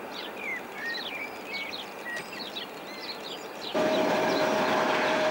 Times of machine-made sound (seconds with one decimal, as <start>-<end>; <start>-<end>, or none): 0.0-0.5; 3.5-5.3